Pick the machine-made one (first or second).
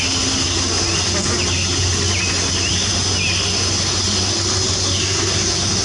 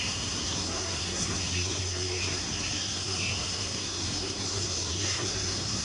second